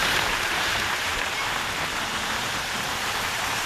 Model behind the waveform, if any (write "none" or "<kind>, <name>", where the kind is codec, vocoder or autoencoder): vocoder, BigVGAN v2